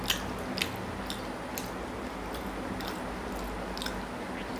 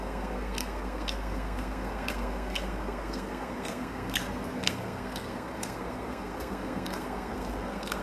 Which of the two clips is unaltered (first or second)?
first